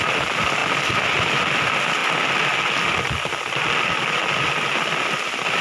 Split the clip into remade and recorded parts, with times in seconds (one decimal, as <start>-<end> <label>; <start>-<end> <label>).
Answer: 0.0-5.6 recorded

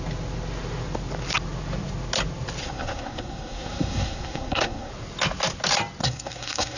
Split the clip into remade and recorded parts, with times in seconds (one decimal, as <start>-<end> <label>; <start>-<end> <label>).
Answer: 0.0-2.6 recorded; 2.6-4.9 remade; 4.9-6.0 recorded; 6.0-6.8 remade

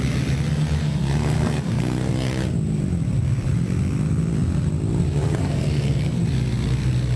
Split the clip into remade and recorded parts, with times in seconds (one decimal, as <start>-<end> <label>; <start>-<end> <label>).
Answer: 0.0-0.8 recorded; 0.8-2.1 remade; 2.1-5.4 recorded; 5.4-6.2 remade; 6.2-7.2 recorded

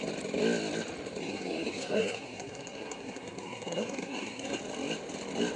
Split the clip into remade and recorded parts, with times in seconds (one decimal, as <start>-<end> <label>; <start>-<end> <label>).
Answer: 0.0-1.2 recorded; 1.2-4.6 remade; 4.6-5.6 recorded

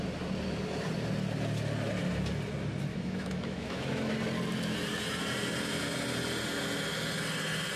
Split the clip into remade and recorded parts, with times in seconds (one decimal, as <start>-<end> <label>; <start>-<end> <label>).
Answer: 0.0-2.9 recorded; 2.9-4.1 remade; 4.1-7.8 recorded

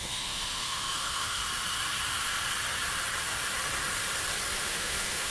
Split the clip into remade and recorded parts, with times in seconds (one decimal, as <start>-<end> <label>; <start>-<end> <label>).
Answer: 0.0-1.4 remade; 1.4-4.6 recorded; 4.6-5.3 remade

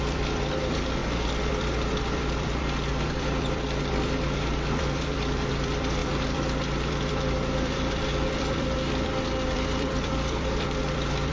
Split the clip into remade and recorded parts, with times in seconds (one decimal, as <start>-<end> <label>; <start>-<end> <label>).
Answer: 0.0-1.0 remade; 1.0-1.5 recorded; 1.5-11.3 remade